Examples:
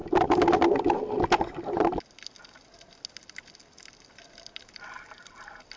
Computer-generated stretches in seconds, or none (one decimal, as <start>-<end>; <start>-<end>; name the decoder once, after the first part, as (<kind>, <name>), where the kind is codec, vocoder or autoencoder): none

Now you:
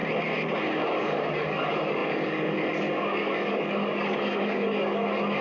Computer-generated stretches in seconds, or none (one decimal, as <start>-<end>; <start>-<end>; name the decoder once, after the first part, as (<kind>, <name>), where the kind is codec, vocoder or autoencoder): 0.8-5.4 (codec, DAC)

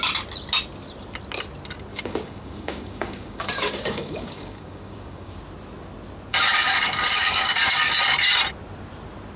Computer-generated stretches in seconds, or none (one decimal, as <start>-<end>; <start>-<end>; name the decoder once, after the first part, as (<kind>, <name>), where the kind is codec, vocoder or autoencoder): 1.9-5.4 (codec, DAC); 6.3-7.9

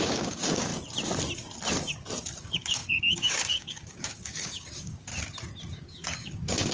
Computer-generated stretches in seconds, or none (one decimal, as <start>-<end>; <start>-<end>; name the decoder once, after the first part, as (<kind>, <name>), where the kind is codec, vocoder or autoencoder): 0.0-0.7 (codec, DAC); 2.4-5.1; 5.7-6.7

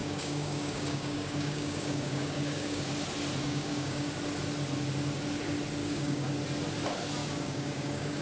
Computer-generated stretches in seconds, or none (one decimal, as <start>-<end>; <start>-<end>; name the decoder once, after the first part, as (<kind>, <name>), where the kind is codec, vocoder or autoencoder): 0.0-2.9 (codec, DAC); 3.4-4.1; 5.8-6.3; 7.2-8.2

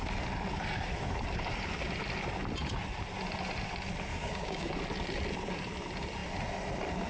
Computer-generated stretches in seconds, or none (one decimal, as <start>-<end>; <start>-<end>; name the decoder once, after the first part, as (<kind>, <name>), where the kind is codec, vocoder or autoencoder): 4.1-4.7 (codec, DAC)

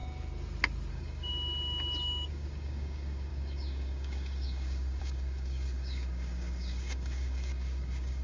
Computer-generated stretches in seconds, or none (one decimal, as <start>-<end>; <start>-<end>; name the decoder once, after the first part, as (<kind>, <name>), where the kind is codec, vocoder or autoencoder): 0.9-1.3 (codec, DAC); 2.3-8.2